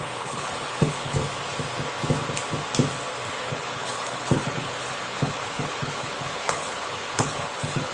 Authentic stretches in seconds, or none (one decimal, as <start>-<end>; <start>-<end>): 1.2-3.3